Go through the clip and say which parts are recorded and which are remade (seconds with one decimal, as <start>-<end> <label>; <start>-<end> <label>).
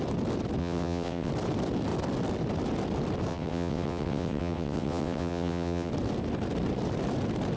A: 0.0-0.6 recorded; 0.6-1.3 remade; 1.3-3.3 recorded; 3.3-5.9 remade; 5.9-7.6 recorded